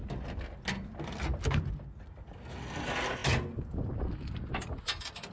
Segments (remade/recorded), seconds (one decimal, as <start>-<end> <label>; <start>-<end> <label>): 0.0-5.3 recorded